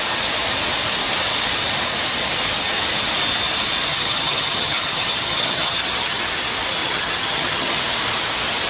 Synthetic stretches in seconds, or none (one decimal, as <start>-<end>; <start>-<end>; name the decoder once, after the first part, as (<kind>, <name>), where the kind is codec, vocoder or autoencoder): 3.9-6.2 (vocoder, HiFi-GAN); 6.8-7.7